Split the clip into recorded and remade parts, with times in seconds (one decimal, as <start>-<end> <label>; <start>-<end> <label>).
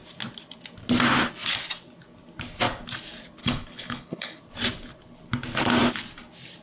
0.0-3.4 recorded; 3.4-4.4 remade; 4.4-6.6 recorded